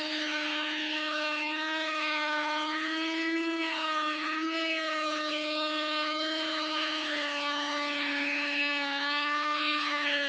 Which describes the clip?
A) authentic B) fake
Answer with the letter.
B